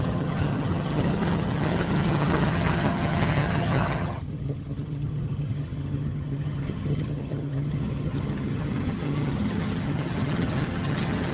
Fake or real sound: fake